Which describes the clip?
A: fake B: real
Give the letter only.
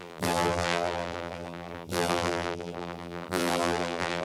A